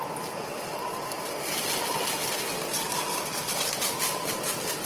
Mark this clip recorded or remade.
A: recorded